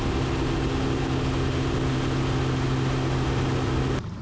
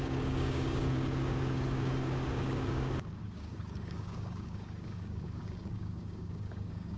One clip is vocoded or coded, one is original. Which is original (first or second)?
first